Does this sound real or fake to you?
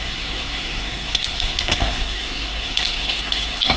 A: fake